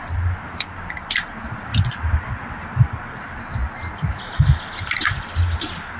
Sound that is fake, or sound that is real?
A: real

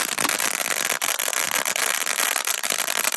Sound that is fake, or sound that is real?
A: fake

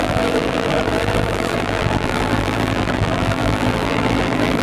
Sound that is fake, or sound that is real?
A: fake